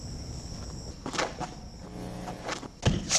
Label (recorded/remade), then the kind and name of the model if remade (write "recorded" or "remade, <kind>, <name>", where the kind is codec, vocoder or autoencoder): recorded